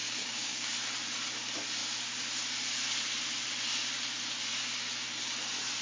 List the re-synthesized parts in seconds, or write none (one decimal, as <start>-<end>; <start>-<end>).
0.0-0.7